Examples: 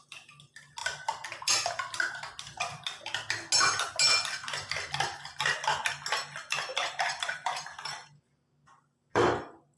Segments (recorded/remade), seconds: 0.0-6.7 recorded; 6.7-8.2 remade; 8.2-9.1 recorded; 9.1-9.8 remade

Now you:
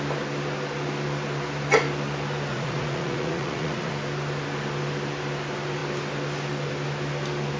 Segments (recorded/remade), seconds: 0.0-2.5 recorded; 2.5-3.9 remade; 3.9-7.6 recorded

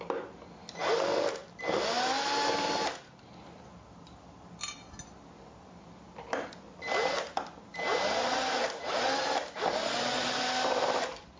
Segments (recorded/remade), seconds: 0.0-11.4 recorded

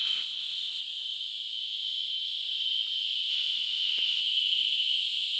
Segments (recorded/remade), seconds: 0.0-0.8 remade; 0.8-3.3 recorded; 3.3-4.2 remade; 4.2-5.4 recorded

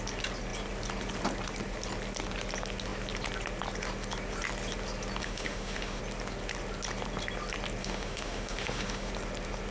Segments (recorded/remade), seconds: 0.0-5.2 recorded; 5.2-6.0 remade; 6.0-7.8 recorded; 7.8-9.1 remade; 9.1-9.7 recorded